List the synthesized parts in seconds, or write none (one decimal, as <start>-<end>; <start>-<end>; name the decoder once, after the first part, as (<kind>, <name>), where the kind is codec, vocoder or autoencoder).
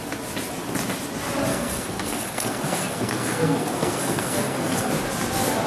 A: 1.5-4.9 (codec, SNAC)